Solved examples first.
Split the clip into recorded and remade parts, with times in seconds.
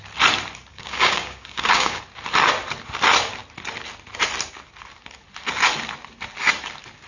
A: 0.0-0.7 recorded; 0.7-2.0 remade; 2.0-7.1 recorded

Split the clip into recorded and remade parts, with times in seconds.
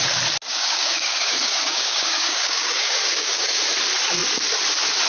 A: 0.0-0.5 recorded; 0.5-3.6 remade; 3.6-5.1 recorded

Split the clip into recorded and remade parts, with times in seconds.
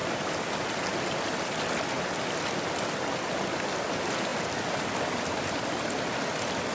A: 0.0-6.7 recorded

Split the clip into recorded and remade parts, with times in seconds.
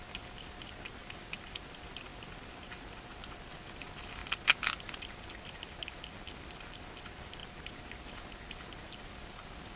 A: 0.0-9.8 recorded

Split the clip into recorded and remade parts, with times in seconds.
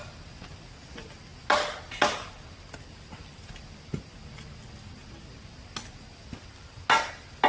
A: 0.0-7.5 recorded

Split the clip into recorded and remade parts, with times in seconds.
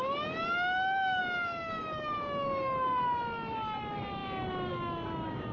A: 0.0-1.2 recorded; 1.2-3.2 remade; 3.2-5.5 recorded